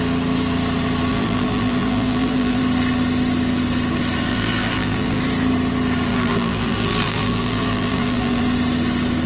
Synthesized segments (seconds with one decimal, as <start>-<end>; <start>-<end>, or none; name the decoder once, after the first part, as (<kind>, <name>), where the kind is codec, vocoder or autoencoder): 1.1-2.6 (vocoder, BigVGAN v2); 4.3-5.2; 6.1-8.4